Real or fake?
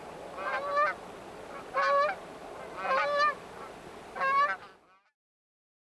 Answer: real